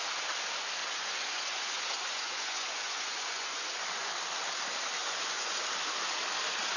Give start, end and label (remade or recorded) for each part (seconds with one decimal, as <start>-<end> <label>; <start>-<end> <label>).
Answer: 0.0-0.8 recorded; 0.8-4.1 remade; 4.1-5.0 recorded; 5.0-5.6 remade; 5.6-6.8 recorded